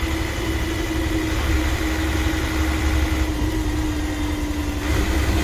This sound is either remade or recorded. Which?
recorded